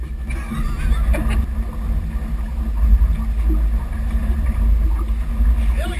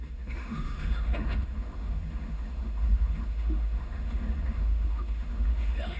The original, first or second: first